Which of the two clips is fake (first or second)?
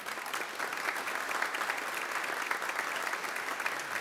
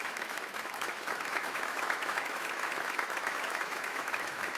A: second